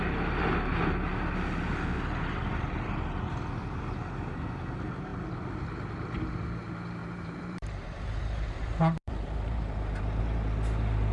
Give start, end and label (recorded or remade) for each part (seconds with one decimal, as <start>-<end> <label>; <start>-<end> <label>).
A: 0.0-7.0 recorded; 7.0-10.2 remade; 10.2-11.1 recorded